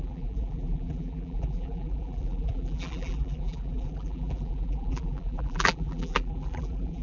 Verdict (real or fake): fake